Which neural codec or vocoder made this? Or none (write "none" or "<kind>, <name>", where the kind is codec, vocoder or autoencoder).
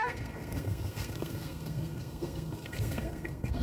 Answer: codec, SNAC